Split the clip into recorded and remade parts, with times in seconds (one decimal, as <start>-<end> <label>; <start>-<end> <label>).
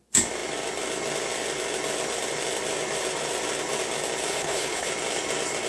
0.0-4.3 recorded; 4.3-4.9 remade; 4.9-5.7 recorded